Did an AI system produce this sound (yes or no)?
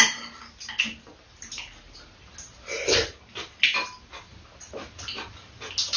no